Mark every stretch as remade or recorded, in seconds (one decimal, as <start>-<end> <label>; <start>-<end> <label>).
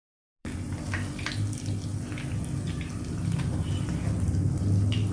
0.0-0.4 recorded; 0.4-1.3 remade; 1.3-5.1 recorded